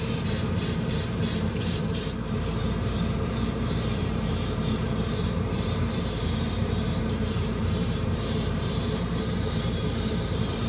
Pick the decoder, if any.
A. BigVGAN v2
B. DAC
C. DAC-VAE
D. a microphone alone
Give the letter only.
A